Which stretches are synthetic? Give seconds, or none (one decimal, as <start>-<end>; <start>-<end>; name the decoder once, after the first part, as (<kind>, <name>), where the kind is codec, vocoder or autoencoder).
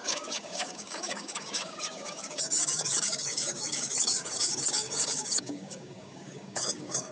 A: 0.0-7.1 (codec, DAC)